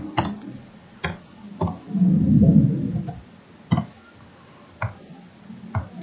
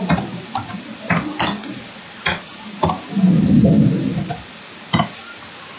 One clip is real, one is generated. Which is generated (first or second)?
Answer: second